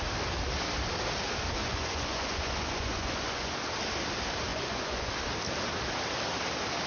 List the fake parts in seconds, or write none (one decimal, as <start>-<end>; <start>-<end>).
1.6-3.5; 4.5-5.1